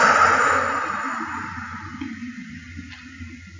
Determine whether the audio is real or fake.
real